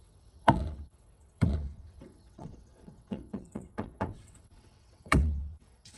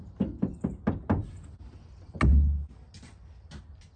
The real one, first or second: second